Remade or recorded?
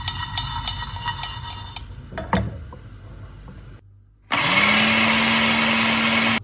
recorded